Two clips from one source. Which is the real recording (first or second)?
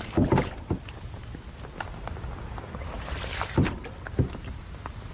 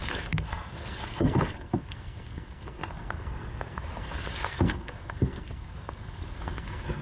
first